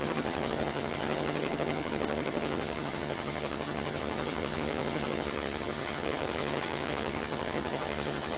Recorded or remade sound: remade